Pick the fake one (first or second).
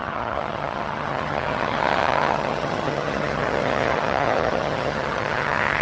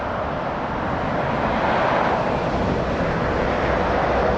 first